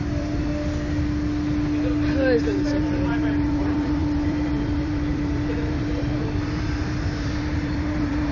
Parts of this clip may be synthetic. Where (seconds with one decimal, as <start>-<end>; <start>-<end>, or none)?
0.0-0.5; 2.4-8.3